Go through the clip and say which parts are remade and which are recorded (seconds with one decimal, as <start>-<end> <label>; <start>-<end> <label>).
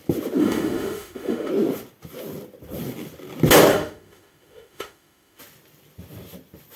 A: 0.0-0.4 recorded; 0.4-1.5 remade; 1.5-3.7 recorded; 3.7-5.4 remade; 5.4-6.8 recorded